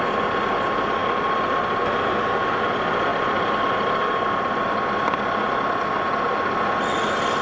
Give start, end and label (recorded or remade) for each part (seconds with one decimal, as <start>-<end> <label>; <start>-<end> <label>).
0.0-7.4 recorded